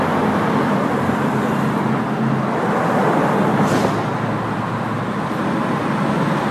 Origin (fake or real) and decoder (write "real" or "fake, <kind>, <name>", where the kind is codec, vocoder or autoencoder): real